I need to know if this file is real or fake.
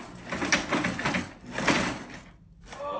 real